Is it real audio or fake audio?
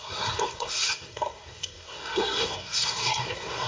fake